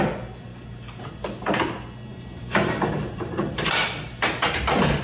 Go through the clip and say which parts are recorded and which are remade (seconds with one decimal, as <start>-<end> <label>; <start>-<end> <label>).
0.0-0.5 recorded; 0.5-1.0 remade; 1.0-2.1 recorded; 2.1-3.7 remade; 3.7-5.0 recorded